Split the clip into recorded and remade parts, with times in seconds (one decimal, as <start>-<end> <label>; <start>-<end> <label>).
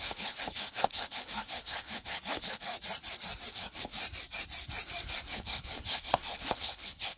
0.0-2.7 remade; 2.7-3.5 recorded; 3.5-4.0 remade; 4.0-5.3 recorded; 5.3-7.2 remade